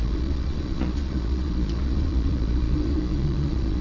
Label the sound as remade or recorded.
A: remade